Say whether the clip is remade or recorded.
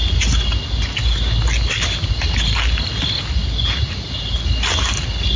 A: recorded